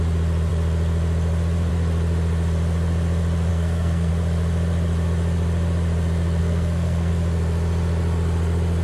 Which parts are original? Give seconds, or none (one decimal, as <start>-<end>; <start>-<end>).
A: 0.0-3.5; 4.1-6.4; 7.1-8.8